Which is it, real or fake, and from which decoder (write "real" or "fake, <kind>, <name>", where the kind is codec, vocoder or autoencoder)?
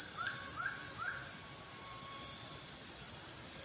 real